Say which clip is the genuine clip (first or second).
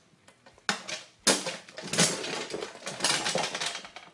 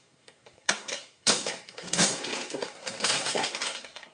first